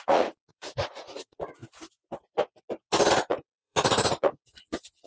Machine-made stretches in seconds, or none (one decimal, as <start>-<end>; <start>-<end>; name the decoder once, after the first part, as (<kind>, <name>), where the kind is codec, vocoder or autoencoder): 0.0-1.6 (vocoder, Vocos); 3.1-5.1